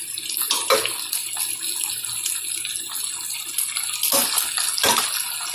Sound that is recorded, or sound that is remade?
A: recorded